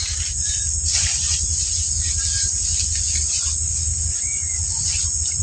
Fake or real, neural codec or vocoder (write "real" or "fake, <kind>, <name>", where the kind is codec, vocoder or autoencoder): real